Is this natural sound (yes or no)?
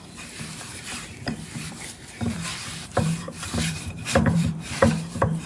no